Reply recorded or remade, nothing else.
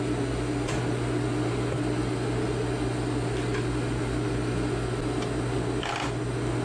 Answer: recorded